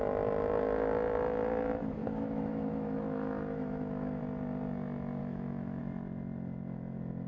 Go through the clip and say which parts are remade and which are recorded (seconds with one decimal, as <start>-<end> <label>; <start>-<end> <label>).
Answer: 0.0-2.0 recorded; 2.0-4.2 remade; 4.2-5.2 recorded; 5.2-5.8 remade; 5.8-7.3 recorded